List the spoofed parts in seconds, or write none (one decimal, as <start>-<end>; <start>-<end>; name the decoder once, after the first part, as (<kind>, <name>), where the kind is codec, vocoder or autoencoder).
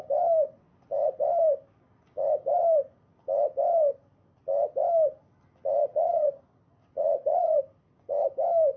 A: 5.8-6.4 (vocoder, Vocos); 7.0-7.6